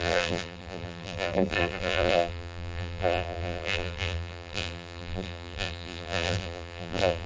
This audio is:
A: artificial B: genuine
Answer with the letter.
A